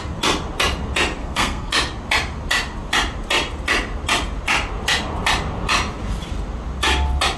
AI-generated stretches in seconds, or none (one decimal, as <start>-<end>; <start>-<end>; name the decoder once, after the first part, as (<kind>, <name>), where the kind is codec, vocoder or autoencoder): 1.2-1.7 (codec, SNAC)